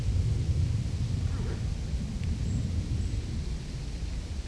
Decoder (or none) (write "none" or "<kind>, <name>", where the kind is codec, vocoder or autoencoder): none